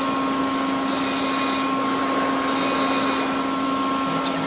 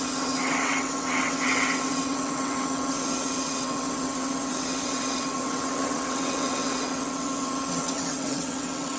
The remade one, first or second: second